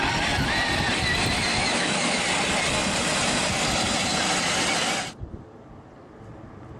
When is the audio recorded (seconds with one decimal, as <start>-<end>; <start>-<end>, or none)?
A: 0.0-1.5; 2.2-6.8